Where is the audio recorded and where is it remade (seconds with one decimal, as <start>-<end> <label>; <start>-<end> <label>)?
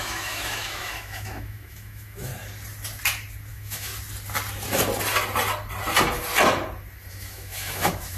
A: 0.0-2.3 remade; 2.3-3.5 recorded; 3.5-3.9 remade; 3.9-7.1 recorded; 7.1-8.2 remade